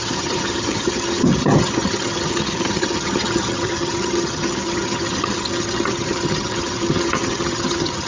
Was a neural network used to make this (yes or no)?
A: yes